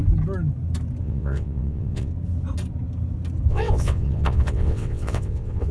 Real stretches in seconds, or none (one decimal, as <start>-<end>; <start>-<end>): 0.0-1.0; 2.1-3.5